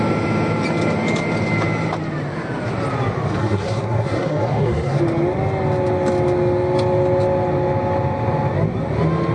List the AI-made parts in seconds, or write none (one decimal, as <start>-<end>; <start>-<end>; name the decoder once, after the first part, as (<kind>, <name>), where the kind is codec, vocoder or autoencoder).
3.4-5.0 (codec, SNAC)